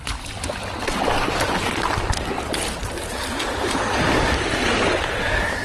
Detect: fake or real real